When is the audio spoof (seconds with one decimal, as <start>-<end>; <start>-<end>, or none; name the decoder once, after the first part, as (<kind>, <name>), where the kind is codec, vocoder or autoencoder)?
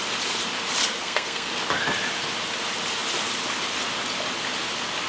0.8-1.5 (codec, SNAC)